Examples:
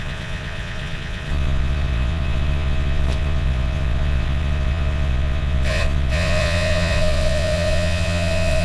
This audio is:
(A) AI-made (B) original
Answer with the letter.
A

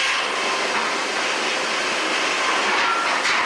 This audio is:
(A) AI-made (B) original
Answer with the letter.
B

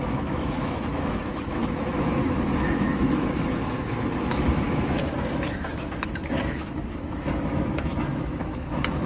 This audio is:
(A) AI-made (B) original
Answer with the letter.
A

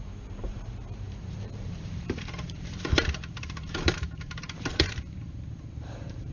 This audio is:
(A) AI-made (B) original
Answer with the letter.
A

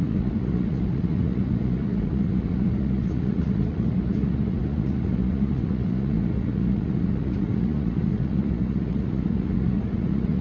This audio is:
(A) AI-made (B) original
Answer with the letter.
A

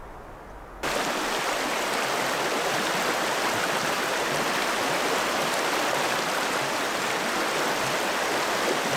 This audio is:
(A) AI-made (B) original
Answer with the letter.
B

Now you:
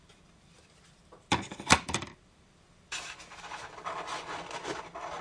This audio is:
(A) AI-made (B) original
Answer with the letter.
B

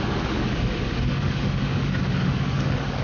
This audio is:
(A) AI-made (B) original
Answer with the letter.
A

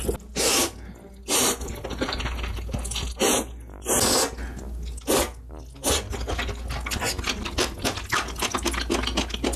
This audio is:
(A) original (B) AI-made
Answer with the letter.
A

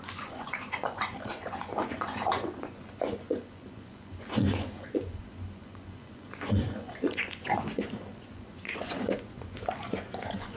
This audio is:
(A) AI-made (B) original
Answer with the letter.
A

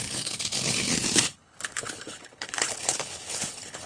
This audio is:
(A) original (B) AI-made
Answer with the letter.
B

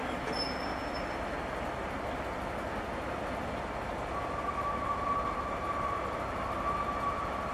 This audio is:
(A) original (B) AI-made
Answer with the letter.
A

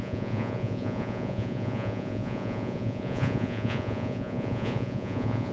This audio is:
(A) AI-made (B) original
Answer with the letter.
A